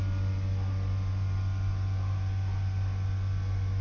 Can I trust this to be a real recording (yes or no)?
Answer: yes